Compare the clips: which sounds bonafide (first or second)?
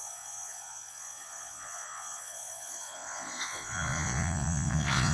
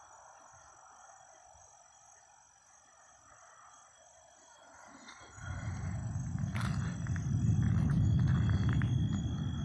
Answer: second